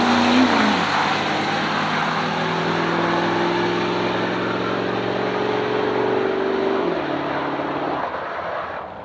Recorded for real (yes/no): yes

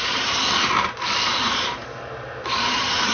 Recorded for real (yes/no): no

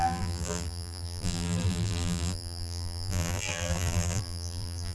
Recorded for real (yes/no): no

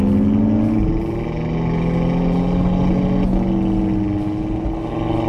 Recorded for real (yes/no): yes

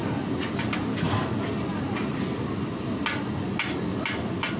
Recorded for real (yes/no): yes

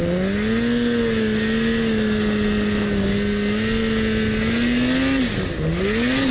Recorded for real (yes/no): yes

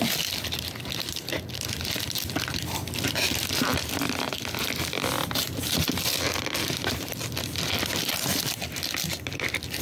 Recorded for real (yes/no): no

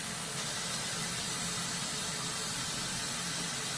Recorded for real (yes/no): no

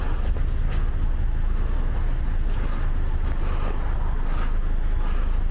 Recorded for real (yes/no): yes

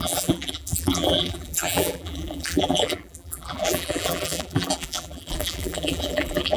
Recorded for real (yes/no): no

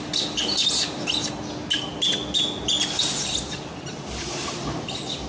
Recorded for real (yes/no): yes